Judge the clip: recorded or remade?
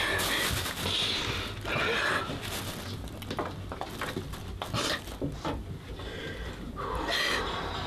recorded